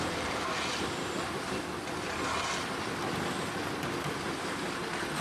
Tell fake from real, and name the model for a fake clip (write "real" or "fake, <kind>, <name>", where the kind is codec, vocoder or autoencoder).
real